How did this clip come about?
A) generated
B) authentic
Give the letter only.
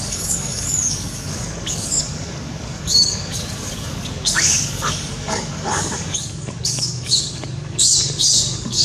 A